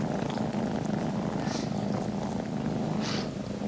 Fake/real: real